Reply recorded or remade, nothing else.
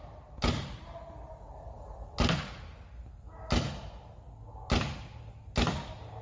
recorded